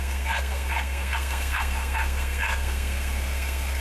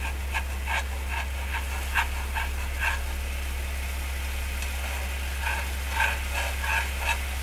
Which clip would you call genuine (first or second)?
second